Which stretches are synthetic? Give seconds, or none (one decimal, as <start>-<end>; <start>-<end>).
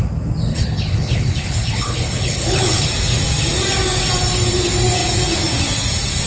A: 0.5-2.9